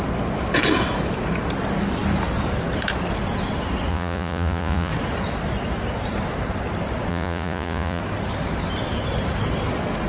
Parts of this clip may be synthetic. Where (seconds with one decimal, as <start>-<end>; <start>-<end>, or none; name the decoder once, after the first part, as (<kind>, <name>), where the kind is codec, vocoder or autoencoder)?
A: 3.9-4.9 (vocoder, Vocos); 7.1-8.0